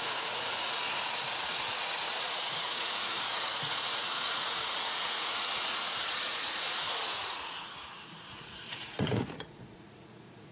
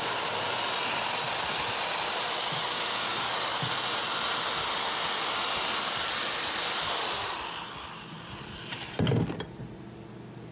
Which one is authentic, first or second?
second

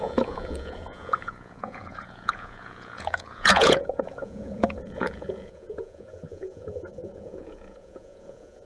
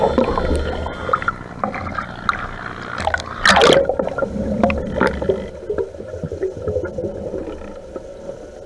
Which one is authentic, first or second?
second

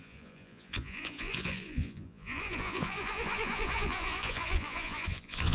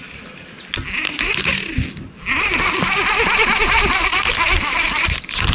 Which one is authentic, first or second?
second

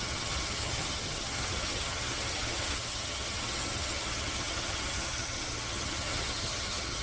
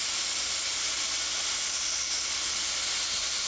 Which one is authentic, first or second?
second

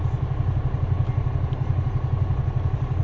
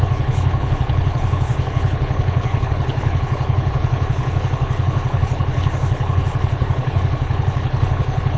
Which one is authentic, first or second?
first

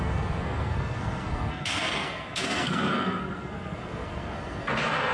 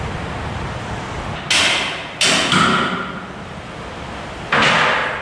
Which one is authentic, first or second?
second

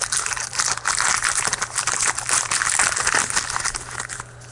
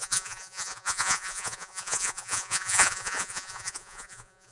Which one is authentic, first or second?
first